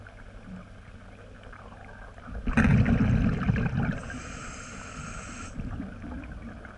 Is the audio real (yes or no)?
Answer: yes